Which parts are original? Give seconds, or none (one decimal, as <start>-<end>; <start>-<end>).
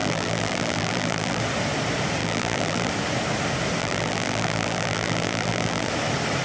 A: 1.4-2.2; 2.9-3.8; 5.9-6.4